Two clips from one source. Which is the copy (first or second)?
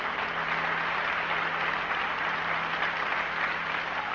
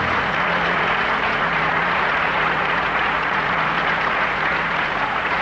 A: second